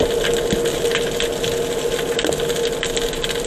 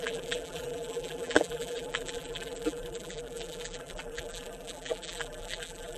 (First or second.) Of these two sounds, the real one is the first